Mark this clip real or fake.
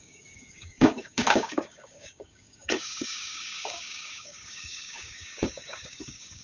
fake